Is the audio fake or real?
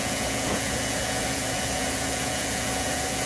fake